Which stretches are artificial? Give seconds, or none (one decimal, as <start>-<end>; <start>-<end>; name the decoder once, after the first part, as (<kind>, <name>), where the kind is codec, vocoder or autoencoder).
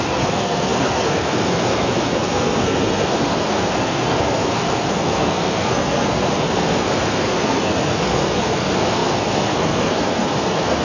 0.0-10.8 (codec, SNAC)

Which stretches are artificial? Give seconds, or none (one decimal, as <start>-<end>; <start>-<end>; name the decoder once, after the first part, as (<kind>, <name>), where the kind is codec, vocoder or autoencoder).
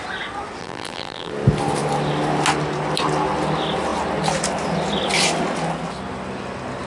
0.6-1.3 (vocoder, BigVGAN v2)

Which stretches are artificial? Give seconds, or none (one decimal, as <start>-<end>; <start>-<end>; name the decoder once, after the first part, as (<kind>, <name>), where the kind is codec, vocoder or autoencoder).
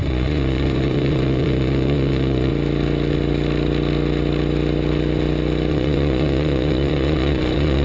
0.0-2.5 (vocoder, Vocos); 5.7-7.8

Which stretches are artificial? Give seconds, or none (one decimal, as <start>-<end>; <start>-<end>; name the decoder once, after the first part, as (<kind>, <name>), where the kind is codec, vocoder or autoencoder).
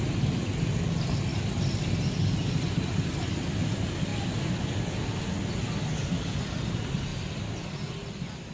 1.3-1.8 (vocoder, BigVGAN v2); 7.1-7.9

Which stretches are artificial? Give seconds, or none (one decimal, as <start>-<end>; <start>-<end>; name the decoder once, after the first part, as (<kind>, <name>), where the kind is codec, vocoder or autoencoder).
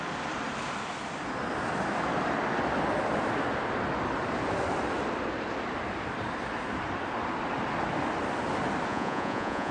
8.9-9.7 (vocoder, Vocos)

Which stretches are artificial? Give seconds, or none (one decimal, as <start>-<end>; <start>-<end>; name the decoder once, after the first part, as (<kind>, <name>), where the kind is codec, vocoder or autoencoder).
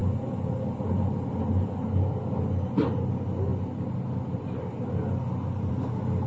none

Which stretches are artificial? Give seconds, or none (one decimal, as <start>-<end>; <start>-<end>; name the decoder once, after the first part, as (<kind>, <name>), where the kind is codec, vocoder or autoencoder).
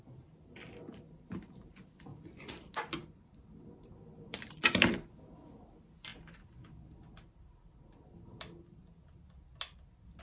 2.1-2.6 (vocoder, Vocos)